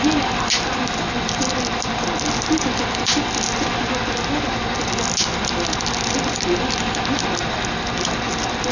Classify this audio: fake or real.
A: real